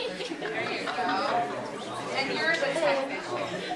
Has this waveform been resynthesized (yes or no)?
yes